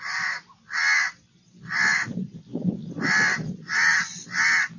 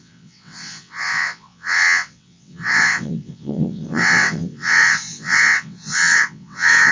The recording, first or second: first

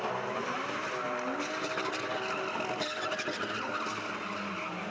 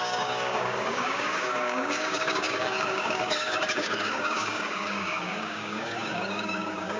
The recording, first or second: first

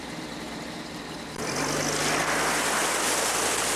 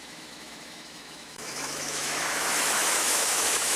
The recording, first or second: first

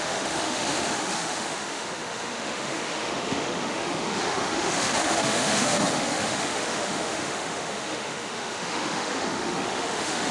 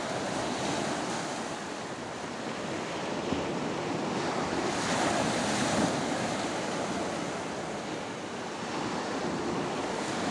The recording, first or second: second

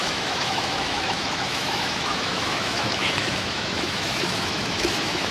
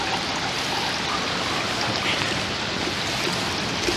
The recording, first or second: second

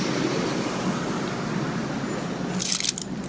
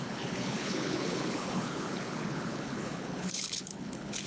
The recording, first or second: first